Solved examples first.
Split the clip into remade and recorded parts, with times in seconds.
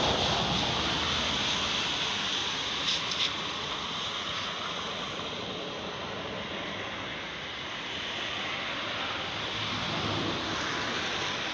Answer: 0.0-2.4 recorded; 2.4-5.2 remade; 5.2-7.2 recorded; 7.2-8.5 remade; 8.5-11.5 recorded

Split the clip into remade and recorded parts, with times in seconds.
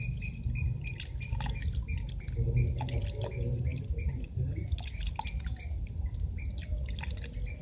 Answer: 0.0-7.6 recorded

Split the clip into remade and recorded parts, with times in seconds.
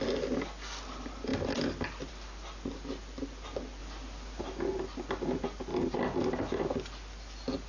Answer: 0.0-7.7 recorded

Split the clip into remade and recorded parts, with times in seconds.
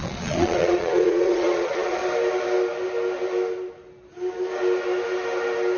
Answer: 0.0-2.0 remade; 2.0-5.8 recorded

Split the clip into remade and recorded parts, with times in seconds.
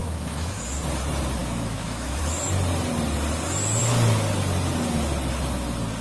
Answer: 0.0-0.6 remade; 0.6-1.4 recorded; 1.4-2.2 remade; 2.2-6.0 recorded